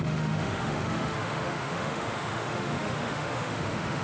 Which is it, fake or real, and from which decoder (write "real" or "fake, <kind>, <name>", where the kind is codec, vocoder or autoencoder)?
fake, autoencoder, DAC-VAE